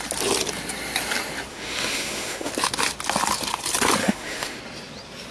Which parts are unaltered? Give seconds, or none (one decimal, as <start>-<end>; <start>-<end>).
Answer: 0.0-1.5; 2.5-4.0; 4.6-5.3